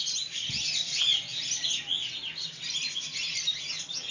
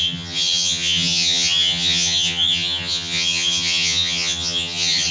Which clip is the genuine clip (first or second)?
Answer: first